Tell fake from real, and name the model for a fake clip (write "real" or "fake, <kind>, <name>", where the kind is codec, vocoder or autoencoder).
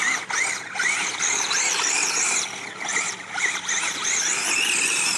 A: real